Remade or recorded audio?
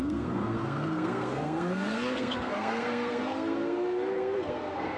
remade